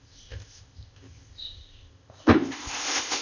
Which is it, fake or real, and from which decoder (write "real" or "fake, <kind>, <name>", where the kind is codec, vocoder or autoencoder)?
fake, codec, ZipCodec